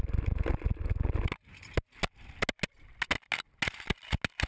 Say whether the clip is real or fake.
real